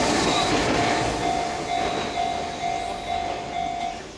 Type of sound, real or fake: real